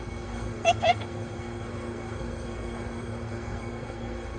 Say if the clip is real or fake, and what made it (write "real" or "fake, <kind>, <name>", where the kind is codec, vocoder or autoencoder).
fake, codec, SNAC